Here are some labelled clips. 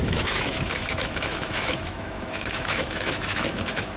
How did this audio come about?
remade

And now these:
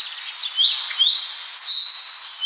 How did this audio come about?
recorded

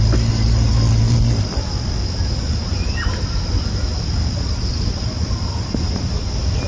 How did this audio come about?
recorded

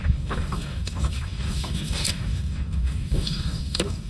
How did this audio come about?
remade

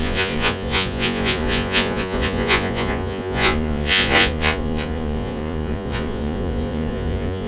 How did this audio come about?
remade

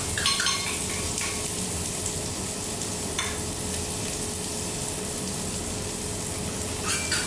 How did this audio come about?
recorded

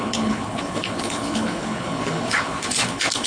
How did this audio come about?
remade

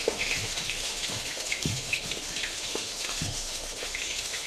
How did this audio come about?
remade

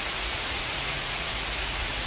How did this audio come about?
remade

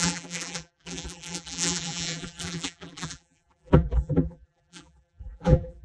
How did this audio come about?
remade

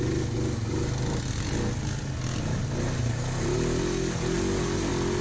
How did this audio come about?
recorded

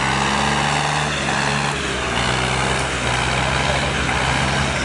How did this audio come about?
recorded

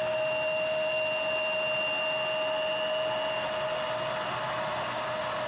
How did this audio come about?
recorded